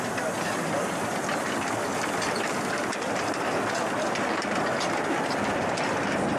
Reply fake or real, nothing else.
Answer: real